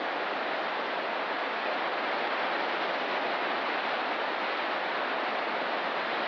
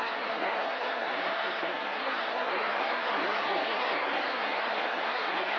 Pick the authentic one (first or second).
first